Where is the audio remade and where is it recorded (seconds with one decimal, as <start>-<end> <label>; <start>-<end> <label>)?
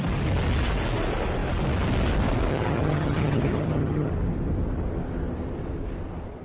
0.0-2.5 recorded; 2.5-4.1 remade; 4.1-6.4 recorded